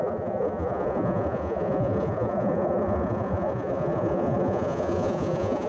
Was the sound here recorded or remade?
remade